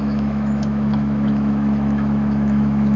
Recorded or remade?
remade